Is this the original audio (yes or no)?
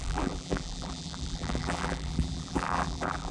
no